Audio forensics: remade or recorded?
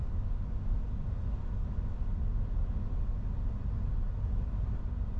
recorded